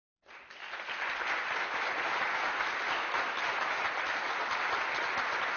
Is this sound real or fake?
real